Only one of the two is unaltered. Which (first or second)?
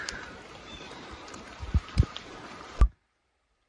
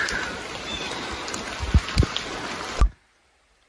second